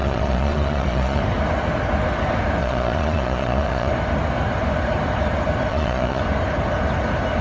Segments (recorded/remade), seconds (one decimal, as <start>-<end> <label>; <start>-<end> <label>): 0.0-1.2 remade; 1.2-2.6 recorded; 2.6-3.9 remade; 3.9-5.7 recorded; 5.7-6.2 remade; 6.2-7.4 recorded